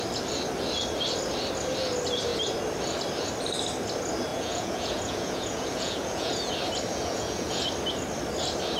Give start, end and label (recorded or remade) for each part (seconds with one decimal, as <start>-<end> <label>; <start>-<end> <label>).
0.0-4.3 recorded; 4.3-6.5 remade; 6.5-6.9 recorded; 6.9-7.6 remade; 7.6-8.8 recorded